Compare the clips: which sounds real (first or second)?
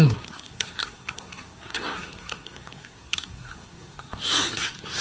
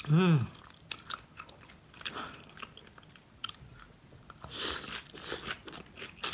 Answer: second